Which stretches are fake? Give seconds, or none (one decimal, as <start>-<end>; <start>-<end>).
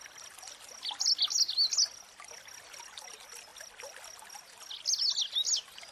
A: none